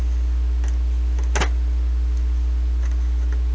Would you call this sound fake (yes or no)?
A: no